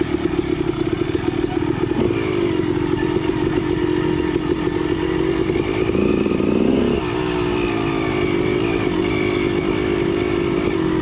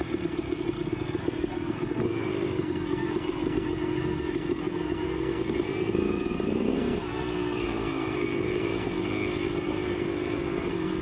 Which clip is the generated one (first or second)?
second